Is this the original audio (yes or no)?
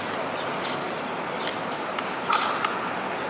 yes